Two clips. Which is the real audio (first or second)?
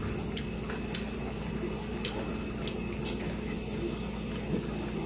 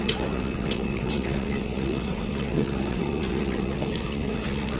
first